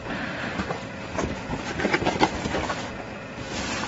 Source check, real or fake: real